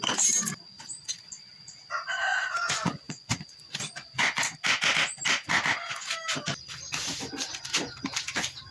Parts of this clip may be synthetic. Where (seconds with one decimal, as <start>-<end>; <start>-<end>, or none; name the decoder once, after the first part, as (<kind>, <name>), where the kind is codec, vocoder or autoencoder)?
2.3-4.4 (vocoder, Vocos)